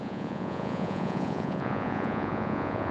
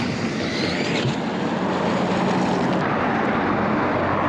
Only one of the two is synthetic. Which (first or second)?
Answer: first